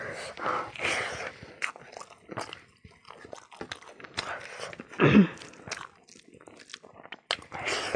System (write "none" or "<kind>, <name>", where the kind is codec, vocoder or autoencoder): none